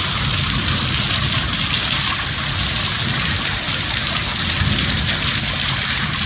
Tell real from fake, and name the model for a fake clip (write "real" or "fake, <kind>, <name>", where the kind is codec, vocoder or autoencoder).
real